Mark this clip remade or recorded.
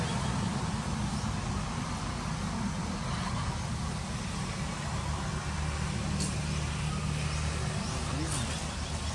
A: recorded